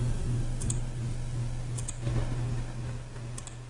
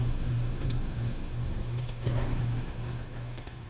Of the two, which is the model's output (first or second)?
second